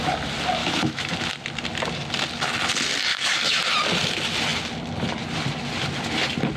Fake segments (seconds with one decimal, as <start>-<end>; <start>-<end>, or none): 0.6-1.1; 3.1-3.6